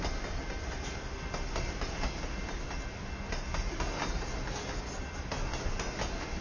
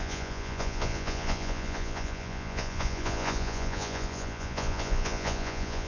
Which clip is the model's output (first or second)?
second